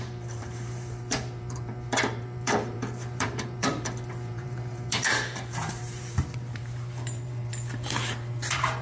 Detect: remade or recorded remade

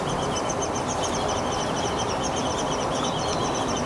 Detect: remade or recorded recorded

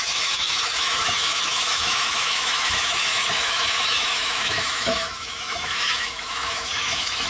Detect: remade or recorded remade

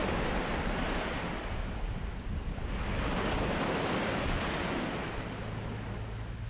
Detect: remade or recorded recorded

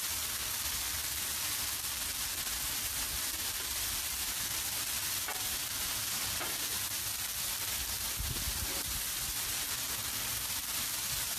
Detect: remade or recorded recorded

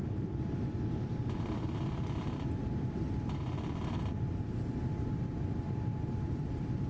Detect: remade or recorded remade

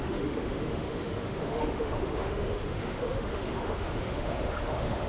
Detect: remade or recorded remade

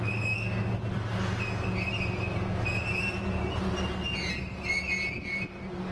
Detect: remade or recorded recorded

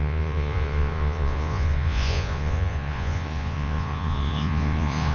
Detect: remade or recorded remade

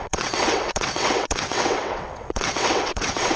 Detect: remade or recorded remade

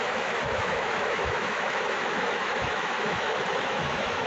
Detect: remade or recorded remade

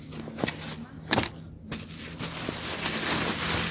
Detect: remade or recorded recorded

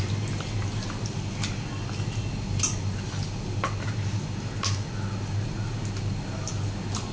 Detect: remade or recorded recorded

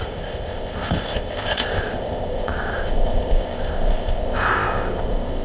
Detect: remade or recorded remade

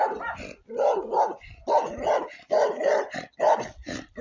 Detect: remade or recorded recorded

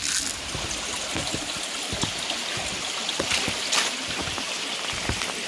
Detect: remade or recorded recorded